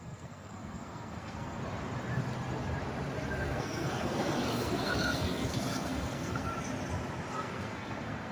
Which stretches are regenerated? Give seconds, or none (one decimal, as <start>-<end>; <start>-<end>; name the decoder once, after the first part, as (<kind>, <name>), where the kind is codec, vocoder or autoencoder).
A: 0.0-1.6 (codec, SNAC); 3.4-6.5; 7.3-8.3